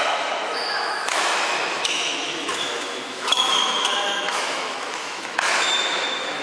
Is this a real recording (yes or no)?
no